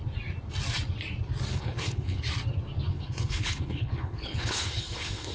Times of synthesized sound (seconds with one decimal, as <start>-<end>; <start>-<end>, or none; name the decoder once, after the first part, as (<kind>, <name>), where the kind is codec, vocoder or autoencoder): 1.5-2.2 (codec, HILCodec); 2.9-5.3